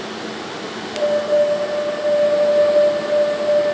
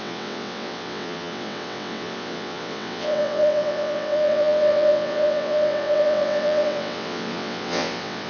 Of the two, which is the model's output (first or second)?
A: second